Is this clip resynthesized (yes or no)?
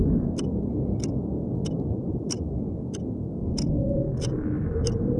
yes